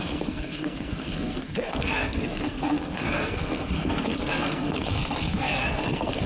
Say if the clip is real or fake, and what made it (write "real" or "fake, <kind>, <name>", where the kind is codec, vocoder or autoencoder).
fake, codec, SNAC